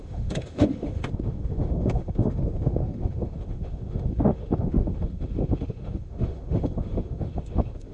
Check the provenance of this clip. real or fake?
fake